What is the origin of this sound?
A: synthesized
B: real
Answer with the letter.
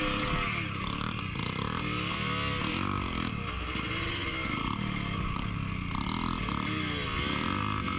B